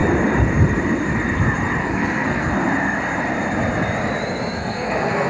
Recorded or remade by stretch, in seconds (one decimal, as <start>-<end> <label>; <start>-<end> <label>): 0.0-1.8 recorded; 1.8-2.5 remade; 2.5-4.6 recorded; 4.6-5.3 remade